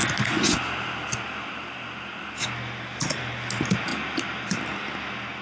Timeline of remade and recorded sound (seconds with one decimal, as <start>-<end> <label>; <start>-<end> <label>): 0.0-5.4 recorded